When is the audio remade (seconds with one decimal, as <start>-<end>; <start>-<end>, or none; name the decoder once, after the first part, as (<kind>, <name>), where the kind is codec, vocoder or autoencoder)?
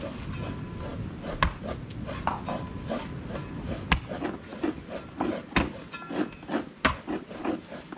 none